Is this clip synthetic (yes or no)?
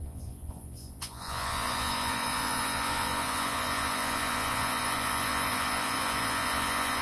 yes